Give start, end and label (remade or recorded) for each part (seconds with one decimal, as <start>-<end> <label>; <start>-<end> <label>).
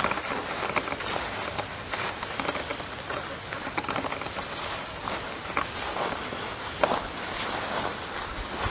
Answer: 0.0-8.7 recorded